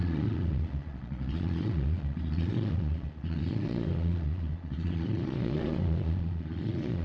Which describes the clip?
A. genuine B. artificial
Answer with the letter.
B